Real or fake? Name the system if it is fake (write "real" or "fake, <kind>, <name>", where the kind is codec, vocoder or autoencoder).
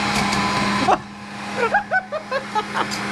real